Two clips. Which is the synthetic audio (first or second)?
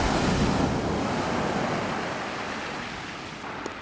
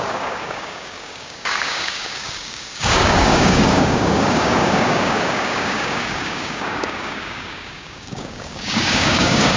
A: second